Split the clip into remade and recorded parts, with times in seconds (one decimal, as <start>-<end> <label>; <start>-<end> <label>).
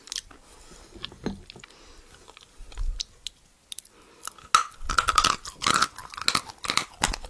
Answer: 0.0-7.3 recorded